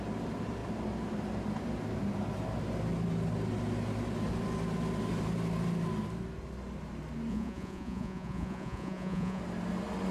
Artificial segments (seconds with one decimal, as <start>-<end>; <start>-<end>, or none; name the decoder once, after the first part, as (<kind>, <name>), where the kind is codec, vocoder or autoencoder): 7.3-9.4 (vocoder, Vocos)